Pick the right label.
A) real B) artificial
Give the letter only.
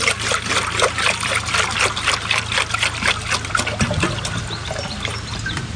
A